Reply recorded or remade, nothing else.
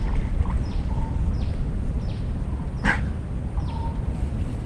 recorded